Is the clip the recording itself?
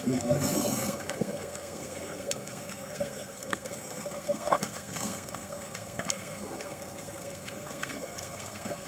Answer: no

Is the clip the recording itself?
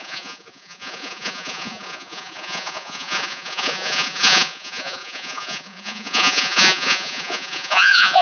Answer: no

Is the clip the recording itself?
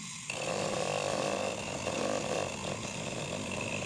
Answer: yes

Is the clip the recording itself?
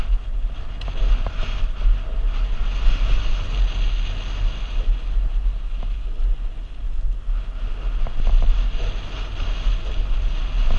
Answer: yes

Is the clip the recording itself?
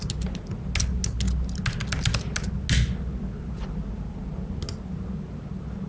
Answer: yes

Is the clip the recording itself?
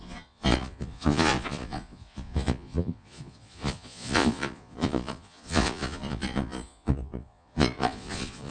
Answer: no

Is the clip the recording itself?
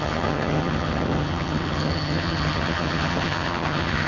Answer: no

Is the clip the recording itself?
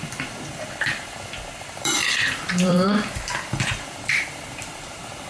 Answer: no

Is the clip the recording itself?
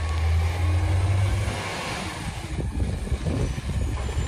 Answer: yes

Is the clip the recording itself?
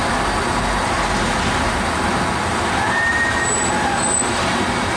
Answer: yes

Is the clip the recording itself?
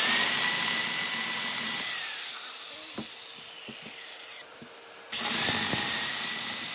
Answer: yes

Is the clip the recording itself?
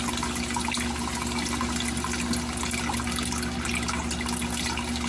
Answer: yes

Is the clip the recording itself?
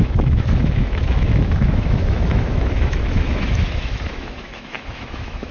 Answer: no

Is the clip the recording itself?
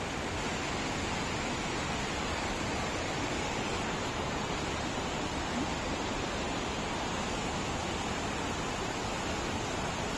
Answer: yes